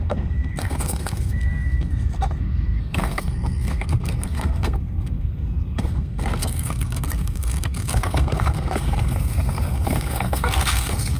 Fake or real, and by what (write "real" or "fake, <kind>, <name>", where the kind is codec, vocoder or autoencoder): fake, codec, SNAC